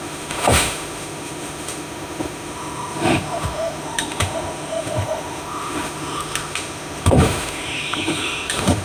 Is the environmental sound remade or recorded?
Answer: remade